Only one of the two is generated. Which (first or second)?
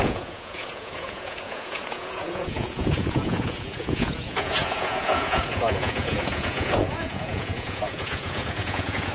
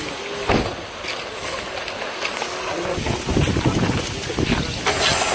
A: first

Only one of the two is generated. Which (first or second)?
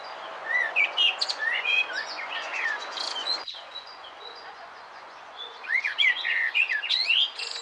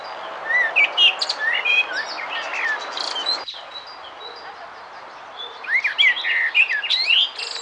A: first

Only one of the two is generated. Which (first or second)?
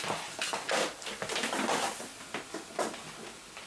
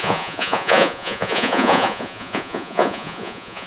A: second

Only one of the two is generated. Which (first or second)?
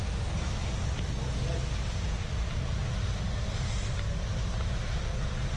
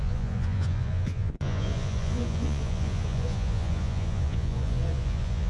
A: second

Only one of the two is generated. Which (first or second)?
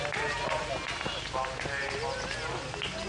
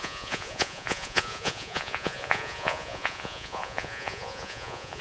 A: second